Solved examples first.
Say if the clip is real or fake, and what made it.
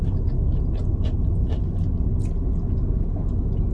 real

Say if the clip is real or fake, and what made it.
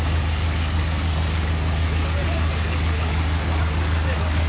fake, codec, DAC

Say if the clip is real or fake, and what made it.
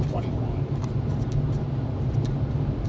real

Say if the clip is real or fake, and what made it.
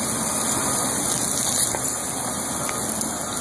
real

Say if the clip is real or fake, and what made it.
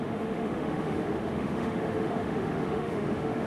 fake, autoencoder, DAC-VAE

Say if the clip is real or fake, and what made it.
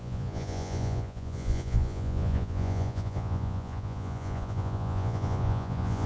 fake, vocoder, Vocos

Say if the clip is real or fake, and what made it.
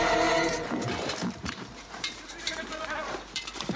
fake, vocoder, BigVGAN v2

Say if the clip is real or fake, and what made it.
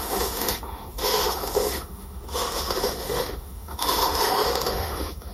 fake, autoencoder, DAC-VAE